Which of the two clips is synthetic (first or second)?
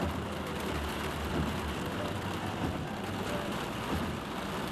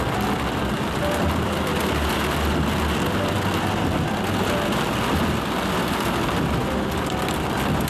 first